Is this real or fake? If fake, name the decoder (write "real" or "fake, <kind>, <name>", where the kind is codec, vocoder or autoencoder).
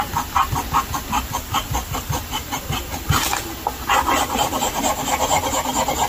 real